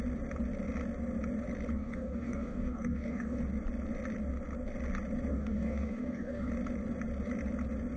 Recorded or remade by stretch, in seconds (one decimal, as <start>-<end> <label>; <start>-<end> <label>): 0.0-1.7 recorded; 1.7-3.4 remade; 3.4-5.3 recorded; 5.3-6.5 remade; 6.5-8.0 recorded

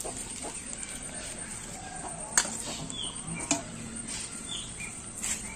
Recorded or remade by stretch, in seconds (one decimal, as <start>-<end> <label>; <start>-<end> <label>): 0.0-5.6 recorded

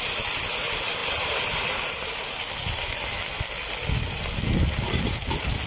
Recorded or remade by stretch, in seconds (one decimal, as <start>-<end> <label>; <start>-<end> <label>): 0.0-1.0 recorded; 1.0-3.7 remade; 3.7-5.7 recorded

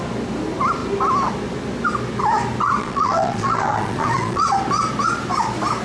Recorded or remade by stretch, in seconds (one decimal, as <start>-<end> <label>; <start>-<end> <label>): 0.0-2.8 recorded; 2.8-4.5 remade; 4.5-5.8 recorded

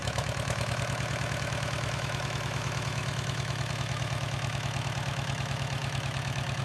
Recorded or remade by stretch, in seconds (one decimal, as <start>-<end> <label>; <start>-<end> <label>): 0.0-6.6 remade

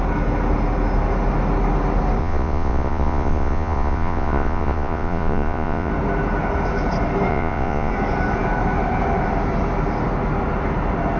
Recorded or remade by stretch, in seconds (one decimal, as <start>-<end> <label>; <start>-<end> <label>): 0.0-2.2 recorded; 2.2-5.9 remade; 5.9-7.3 recorded; 7.3-7.9 remade; 7.9-11.2 recorded

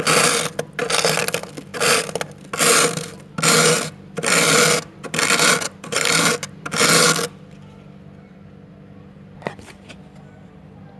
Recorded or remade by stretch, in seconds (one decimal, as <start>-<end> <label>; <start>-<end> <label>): 0.0-11.0 recorded